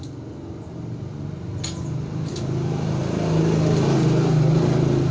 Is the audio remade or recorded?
recorded